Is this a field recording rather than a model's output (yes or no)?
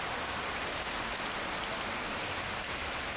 yes